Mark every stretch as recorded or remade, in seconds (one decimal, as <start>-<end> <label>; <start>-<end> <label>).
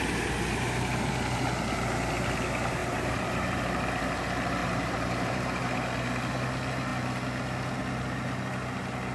0.0-2.8 recorded; 2.8-4.1 remade; 4.1-4.6 recorded; 4.6-5.4 remade; 5.4-9.1 recorded